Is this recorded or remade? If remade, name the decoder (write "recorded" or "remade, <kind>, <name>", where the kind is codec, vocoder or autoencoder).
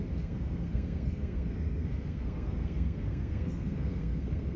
remade, codec, SNAC